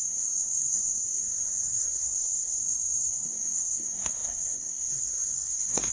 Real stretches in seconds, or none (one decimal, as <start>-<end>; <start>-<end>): none